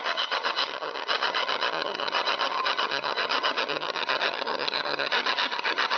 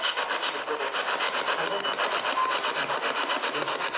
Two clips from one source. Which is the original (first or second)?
second